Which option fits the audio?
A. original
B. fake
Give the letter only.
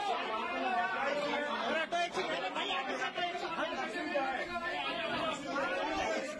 A